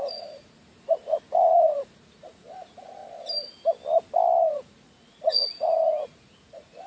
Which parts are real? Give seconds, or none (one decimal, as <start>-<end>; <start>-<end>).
3.0-4.5